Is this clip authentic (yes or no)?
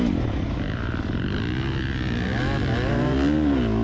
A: yes